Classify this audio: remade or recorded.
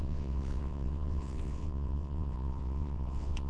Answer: remade